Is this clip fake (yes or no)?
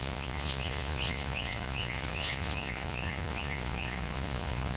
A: yes